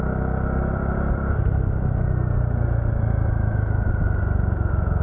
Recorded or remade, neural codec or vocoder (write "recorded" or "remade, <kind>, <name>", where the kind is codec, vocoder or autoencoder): recorded